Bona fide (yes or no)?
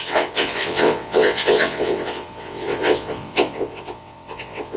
no